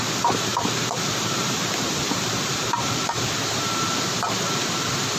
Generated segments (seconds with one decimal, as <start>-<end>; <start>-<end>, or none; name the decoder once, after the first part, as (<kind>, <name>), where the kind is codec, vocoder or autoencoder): 0.5-3.6 (vocoder, BigVGAN v2)